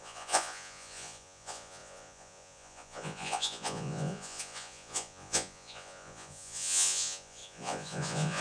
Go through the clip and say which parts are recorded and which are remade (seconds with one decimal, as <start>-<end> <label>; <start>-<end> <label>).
0.0-8.4 remade